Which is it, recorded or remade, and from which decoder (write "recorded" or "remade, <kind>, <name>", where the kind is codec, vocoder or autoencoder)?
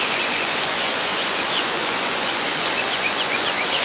remade, vocoder, Vocos